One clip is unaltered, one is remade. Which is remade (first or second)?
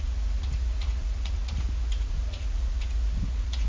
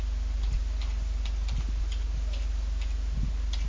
first